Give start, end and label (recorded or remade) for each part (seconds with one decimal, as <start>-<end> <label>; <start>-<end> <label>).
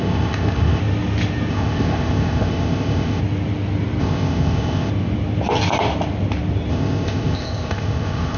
0.0-0.8 remade; 0.8-1.5 recorded; 1.5-3.2 remade; 3.2-4.0 recorded; 4.0-4.9 remade; 4.9-6.7 recorded; 6.7-8.4 remade